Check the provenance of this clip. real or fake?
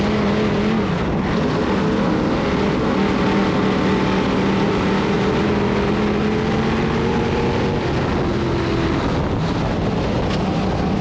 real